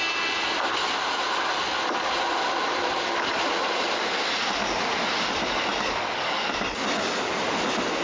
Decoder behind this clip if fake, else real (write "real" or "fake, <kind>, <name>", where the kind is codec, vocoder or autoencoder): real